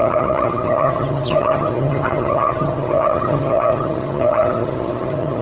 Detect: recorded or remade remade